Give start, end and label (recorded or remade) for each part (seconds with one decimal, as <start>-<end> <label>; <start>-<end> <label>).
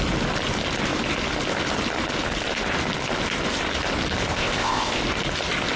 0.0-4.3 recorded; 4.3-5.0 remade; 5.0-5.8 recorded